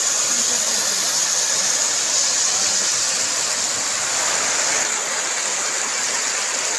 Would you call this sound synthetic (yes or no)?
no